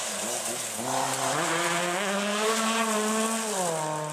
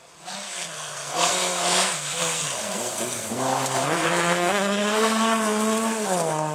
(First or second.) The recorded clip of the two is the first